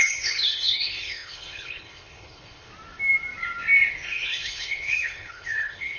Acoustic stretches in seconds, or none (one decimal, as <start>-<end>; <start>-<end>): 2.7-3.9